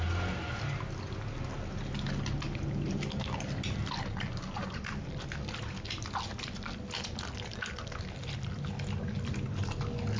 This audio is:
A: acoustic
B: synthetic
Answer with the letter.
A